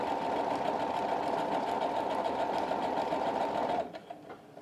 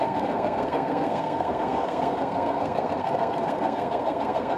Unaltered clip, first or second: first